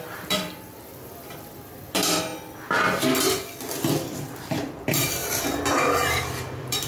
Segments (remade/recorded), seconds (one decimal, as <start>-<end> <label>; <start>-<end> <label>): 0.0-2.3 remade; 2.3-4.1 recorded; 4.1-5.2 remade; 5.2-5.7 recorded; 5.7-6.9 remade